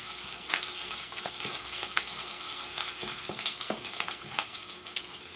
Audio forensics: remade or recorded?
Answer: remade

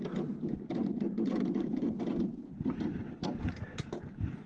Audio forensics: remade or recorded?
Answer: recorded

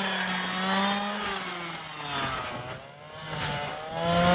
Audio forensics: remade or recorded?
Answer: recorded